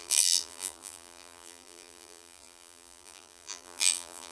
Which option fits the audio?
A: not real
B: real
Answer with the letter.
A